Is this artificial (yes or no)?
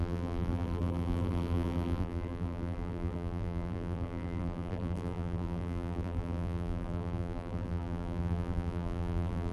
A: yes